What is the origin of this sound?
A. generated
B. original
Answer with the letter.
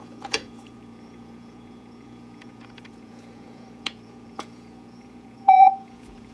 A